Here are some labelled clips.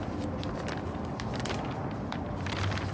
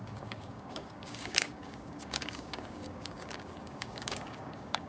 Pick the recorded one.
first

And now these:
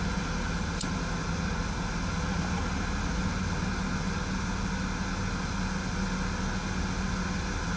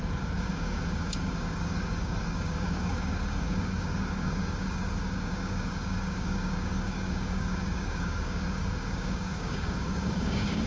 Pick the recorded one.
first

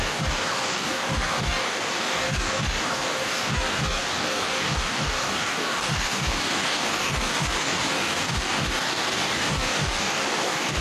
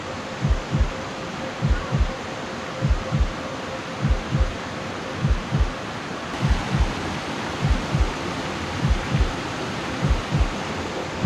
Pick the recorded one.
second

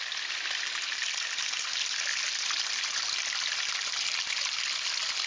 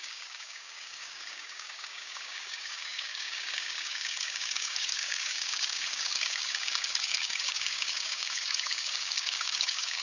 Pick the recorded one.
first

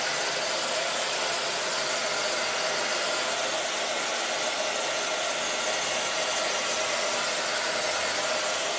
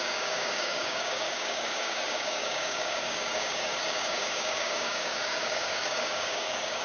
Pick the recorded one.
first